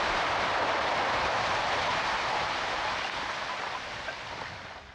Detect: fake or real real